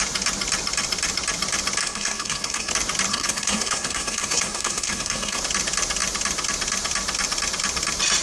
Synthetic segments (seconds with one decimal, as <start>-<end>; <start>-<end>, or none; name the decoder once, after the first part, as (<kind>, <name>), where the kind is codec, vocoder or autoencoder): 1.8-2.7 (codec, SNAC); 3.1-5.4